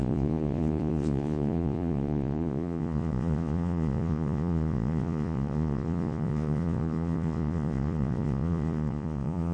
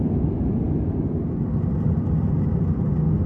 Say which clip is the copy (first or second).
first